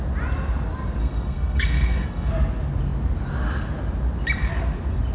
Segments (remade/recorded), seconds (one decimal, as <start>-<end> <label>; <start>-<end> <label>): 0.0-1.0 recorded; 1.0-2.3 remade; 2.3-5.1 recorded